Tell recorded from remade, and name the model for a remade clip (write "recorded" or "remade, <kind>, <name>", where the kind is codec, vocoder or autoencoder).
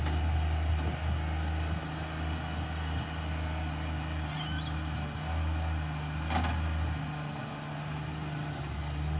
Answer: recorded